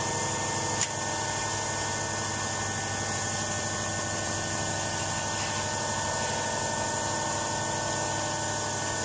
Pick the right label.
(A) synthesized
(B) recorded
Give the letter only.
B